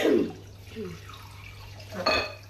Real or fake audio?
real